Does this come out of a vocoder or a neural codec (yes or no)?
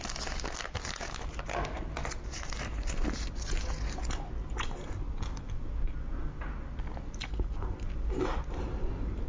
no